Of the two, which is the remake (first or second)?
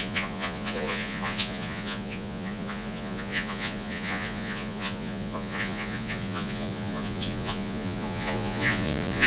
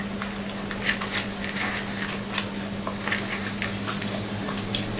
first